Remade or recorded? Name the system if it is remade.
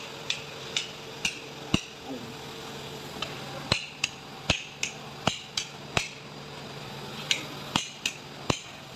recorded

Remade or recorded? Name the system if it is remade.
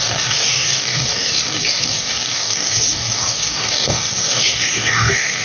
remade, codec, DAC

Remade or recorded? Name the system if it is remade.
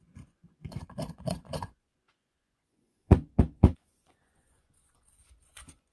remade, vocoder, Vocos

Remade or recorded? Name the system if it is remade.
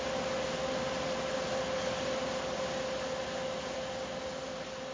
recorded